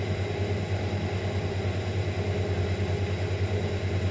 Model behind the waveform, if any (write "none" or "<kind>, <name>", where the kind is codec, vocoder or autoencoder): none